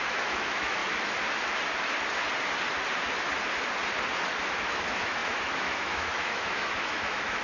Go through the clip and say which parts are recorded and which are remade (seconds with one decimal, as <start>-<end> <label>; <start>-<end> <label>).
0.0-0.8 remade; 0.8-4.4 recorded; 4.4-7.4 remade